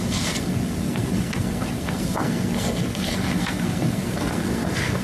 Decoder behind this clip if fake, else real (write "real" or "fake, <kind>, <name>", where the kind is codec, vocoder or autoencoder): fake, codec, SNAC